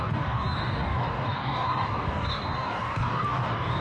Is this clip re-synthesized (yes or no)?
yes